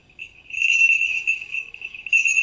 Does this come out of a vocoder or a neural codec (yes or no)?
yes